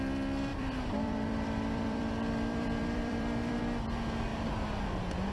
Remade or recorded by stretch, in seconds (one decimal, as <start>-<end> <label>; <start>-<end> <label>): 0.0-0.5 recorded; 0.5-3.6 remade; 3.6-5.3 recorded